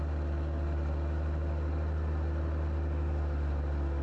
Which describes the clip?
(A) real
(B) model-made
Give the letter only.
A